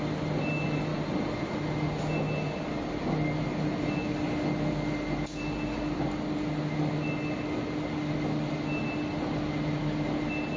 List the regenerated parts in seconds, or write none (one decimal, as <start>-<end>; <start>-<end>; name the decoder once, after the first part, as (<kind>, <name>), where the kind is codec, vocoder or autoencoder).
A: none